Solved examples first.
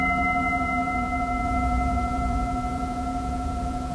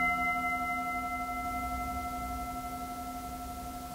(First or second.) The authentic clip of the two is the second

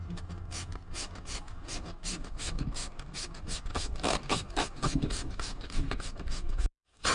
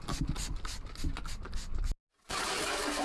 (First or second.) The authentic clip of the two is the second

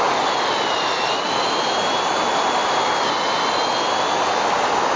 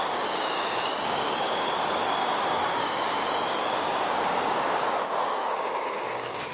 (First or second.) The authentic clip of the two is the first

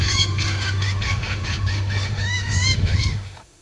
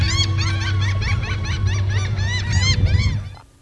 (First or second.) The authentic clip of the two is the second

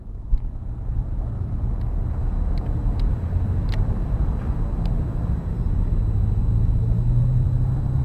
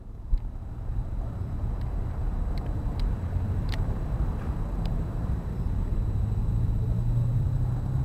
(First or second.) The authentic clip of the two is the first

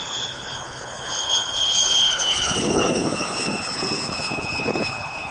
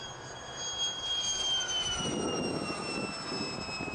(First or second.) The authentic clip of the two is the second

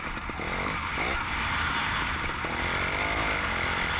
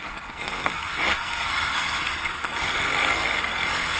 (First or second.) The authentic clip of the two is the first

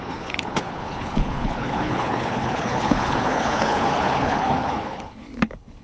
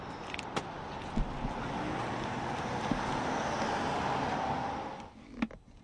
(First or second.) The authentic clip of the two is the second